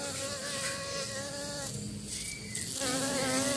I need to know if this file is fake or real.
real